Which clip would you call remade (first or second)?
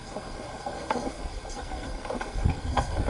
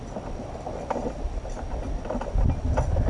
first